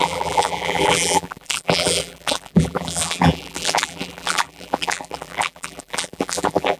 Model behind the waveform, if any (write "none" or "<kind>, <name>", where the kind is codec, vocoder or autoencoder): vocoder, BigVGAN v2